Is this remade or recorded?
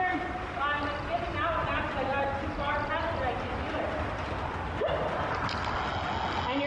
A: recorded